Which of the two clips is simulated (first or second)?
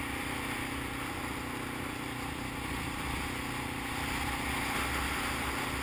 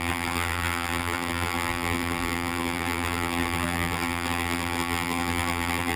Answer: second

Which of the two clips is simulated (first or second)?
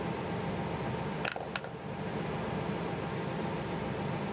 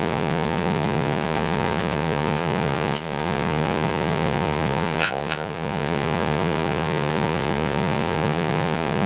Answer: second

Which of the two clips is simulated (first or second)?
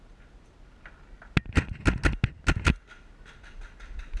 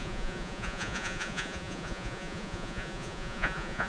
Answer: second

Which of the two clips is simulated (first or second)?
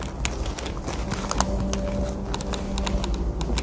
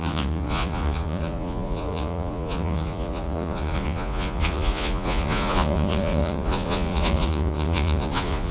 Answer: second